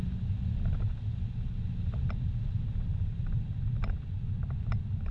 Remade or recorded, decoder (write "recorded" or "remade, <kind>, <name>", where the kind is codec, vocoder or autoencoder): recorded